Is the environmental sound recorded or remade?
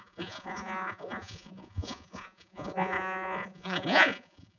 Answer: remade